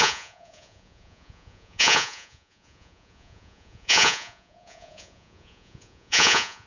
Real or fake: fake